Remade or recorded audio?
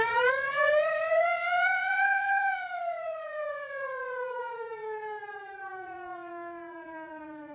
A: remade